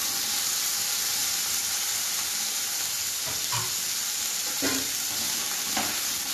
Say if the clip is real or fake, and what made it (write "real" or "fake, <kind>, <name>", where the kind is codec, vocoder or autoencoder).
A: real